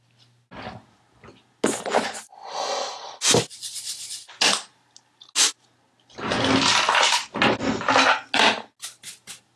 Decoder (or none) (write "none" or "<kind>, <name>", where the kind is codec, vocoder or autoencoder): none